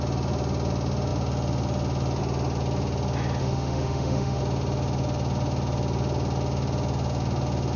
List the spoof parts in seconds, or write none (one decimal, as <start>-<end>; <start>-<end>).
3.4-4.4